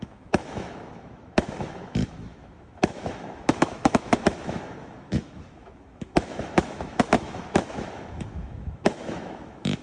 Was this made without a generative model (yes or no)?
no